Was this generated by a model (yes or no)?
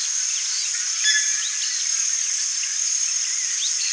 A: no